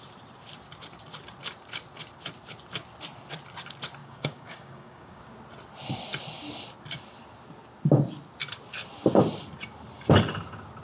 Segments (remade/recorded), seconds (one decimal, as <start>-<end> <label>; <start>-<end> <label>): 0.0-4.0 recorded; 4.0-5.2 remade; 5.2-10.8 recorded